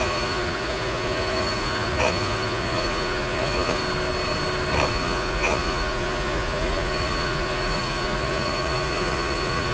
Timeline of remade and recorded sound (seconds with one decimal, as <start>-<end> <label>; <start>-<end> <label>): 0.0-3.8 remade; 3.8-4.9 recorded; 4.9-9.7 remade

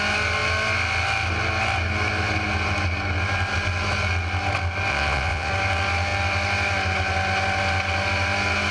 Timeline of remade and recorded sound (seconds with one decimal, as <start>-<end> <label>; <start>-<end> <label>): 0.0-4.9 recorded; 4.9-5.5 remade; 5.5-8.7 recorded

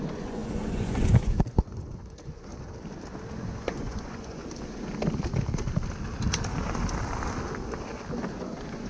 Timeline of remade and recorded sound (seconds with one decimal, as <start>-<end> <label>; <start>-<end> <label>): 0.0-2.5 remade; 2.5-3.3 recorded; 3.3-4.4 remade; 4.4-8.3 recorded; 8.3-8.9 remade

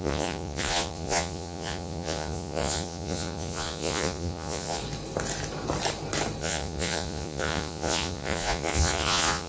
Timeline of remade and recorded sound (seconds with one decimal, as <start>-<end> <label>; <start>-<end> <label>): 0.0-4.8 remade; 4.8-6.4 recorded; 6.4-9.5 remade

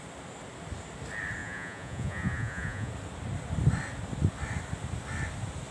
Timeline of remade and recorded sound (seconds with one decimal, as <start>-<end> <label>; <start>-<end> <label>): 0.0-1.4 recorded; 1.4-2.9 remade; 2.9-5.7 recorded

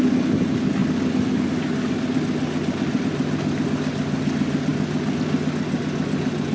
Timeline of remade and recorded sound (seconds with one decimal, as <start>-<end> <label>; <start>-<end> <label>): 0.0-6.5 recorded

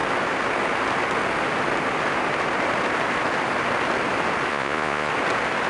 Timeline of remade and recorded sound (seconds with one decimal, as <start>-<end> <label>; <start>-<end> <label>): 0.0-4.5 recorded; 4.5-5.1 remade; 5.1-5.7 recorded